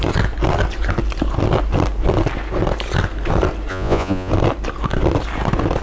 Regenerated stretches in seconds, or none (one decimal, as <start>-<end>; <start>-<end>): 3.7-4.3